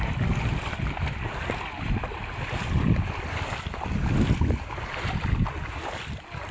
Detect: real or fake real